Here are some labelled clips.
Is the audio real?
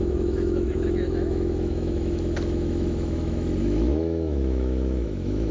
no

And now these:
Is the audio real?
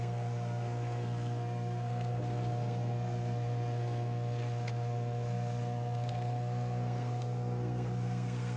no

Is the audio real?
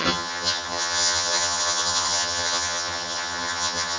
no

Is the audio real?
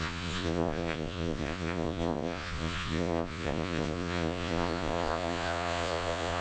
no